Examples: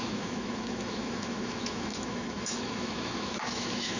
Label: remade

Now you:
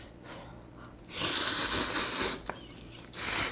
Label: recorded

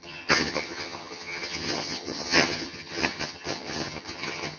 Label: remade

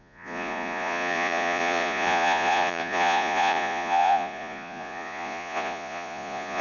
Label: remade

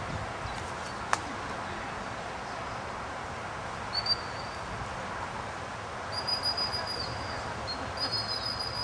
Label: recorded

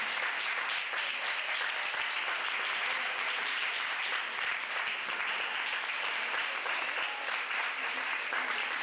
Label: recorded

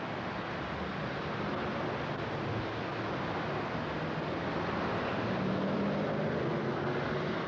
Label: recorded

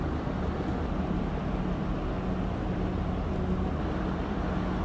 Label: recorded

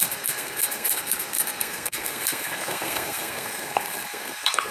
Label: remade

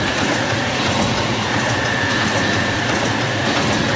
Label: remade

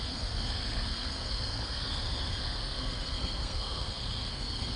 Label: remade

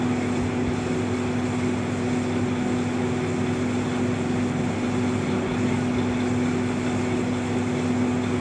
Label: recorded